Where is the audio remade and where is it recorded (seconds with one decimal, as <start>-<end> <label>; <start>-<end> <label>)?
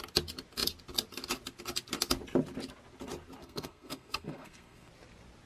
0.0-3.4 recorded; 3.4-4.9 remade; 4.9-5.5 recorded